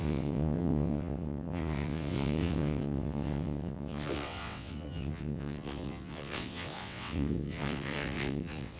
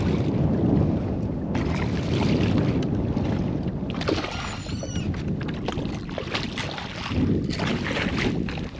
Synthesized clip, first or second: first